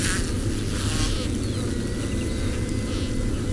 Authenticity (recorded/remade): recorded